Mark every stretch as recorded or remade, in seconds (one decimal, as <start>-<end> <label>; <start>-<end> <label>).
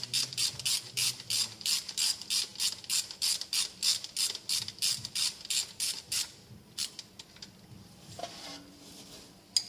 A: 0.0-9.7 recorded